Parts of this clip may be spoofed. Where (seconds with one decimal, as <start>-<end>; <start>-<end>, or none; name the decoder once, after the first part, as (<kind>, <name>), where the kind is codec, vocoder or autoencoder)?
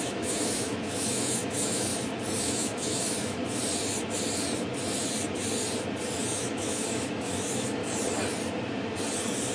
0.0-1.9 (autoencoder, DAC-VAE); 2.4-3.4; 6.4-7.8